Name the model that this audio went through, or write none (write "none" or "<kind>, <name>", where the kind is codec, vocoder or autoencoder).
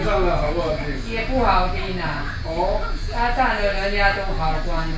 none